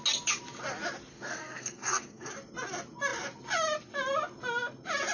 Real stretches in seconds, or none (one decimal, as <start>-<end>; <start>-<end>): 0.0-1.1; 2.3-5.1